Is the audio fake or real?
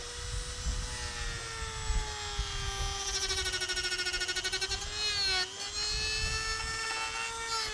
real